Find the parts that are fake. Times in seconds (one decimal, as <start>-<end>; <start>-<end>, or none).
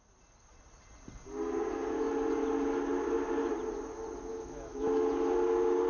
4.3-5.0